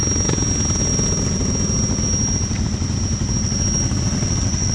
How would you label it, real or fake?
real